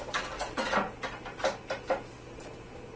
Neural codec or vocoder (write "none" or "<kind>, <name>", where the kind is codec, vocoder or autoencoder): none